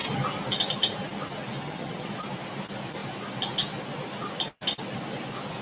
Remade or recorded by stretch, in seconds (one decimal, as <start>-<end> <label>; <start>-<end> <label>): 0.0-1.6 recorded; 1.6-2.1 remade; 2.1-5.6 recorded